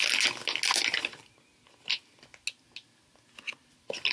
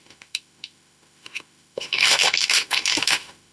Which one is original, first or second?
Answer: first